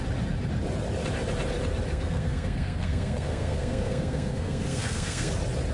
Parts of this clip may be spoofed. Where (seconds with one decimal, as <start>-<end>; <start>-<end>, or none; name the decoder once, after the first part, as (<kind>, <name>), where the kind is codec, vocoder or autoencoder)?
1.9-5.3 (codec, SNAC)